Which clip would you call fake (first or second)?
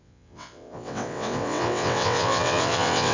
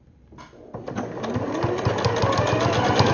first